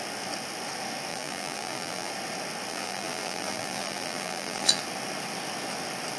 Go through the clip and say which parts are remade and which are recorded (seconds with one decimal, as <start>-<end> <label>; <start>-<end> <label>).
0.0-1.1 recorded; 1.1-2.1 remade; 2.1-2.7 recorded; 2.7-4.8 remade; 4.8-6.2 recorded